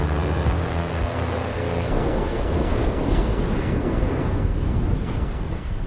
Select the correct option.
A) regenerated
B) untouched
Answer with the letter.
A